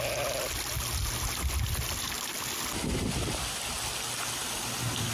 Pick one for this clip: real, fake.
real